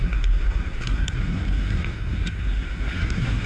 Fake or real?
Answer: fake